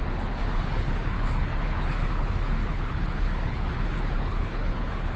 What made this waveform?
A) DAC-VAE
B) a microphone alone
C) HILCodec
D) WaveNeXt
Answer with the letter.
C